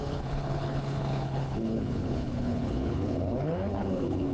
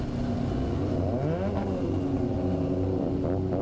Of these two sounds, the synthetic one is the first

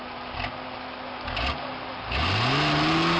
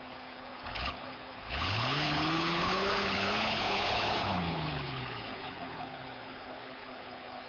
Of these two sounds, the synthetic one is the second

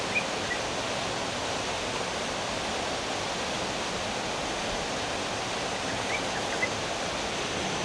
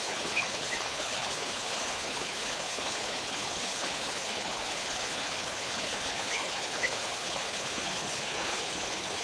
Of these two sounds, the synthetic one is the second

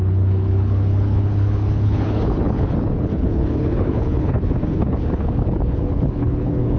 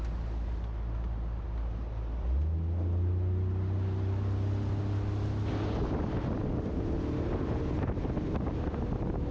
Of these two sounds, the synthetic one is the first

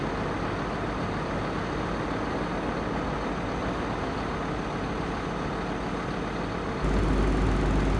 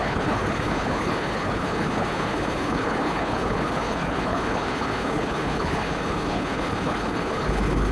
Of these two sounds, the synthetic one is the second